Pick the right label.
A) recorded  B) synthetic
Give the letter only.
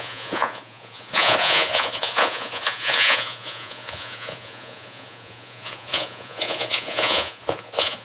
B